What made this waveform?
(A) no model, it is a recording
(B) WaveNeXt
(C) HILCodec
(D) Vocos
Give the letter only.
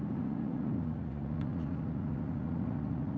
D